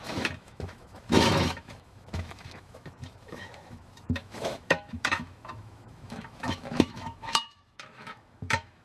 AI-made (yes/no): yes